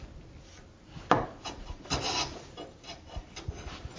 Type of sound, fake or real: real